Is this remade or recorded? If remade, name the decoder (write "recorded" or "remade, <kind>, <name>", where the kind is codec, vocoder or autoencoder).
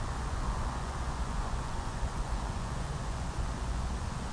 remade, vocoder, Vocos